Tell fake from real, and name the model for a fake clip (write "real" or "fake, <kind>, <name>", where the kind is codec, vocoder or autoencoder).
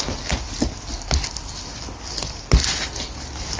real